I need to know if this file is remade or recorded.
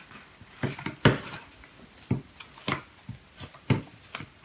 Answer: recorded